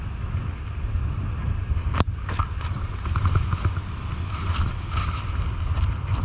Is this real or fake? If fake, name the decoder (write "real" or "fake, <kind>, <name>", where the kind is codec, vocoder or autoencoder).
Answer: real